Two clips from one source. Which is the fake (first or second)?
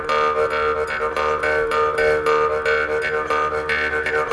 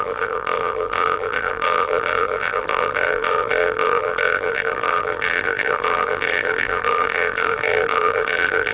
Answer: second